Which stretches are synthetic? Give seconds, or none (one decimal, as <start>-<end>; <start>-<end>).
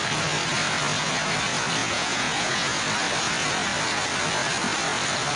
1.8-2.8